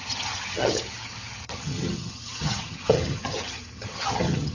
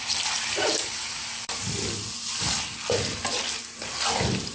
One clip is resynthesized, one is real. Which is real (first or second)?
second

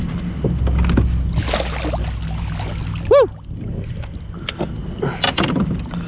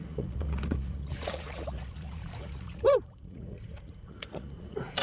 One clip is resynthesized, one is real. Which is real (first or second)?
first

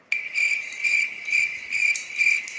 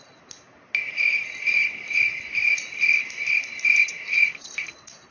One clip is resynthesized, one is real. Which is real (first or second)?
second